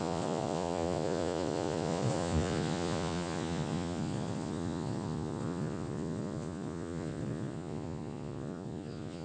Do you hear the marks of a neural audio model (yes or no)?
yes